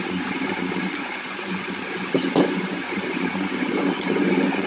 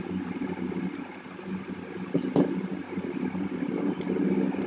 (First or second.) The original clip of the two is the second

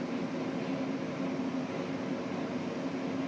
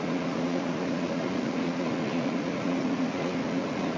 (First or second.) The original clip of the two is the first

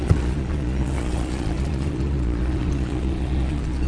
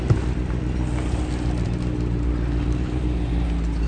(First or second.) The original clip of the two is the second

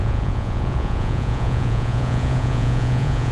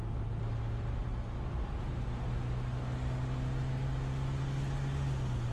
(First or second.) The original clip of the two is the second